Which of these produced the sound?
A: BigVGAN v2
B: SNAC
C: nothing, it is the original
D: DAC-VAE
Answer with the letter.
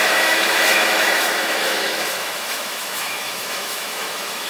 D